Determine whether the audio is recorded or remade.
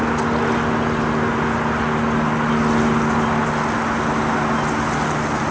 recorded